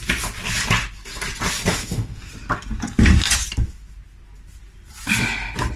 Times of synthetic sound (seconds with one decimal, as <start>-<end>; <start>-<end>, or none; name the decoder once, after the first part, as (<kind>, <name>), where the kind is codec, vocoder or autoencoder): 1.7-2.3 (autoencoder, DAC-VAE)